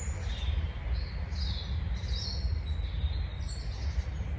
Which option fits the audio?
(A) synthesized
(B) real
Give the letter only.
B